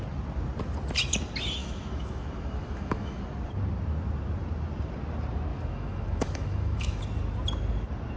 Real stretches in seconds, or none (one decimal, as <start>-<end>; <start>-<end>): 0.0-1.6; 3.2-5.5; 7.0-8.2